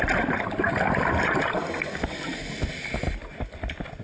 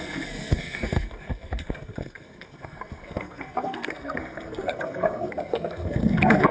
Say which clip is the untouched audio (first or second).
first